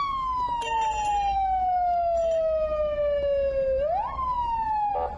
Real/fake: real